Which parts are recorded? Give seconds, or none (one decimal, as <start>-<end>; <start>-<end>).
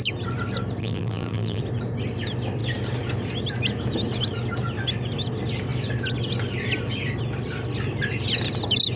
0.0-0.8; 1.6-9.0